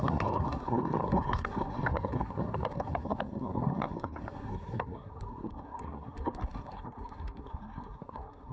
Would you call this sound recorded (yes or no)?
no